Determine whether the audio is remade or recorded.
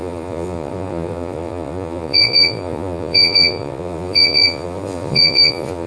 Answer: remade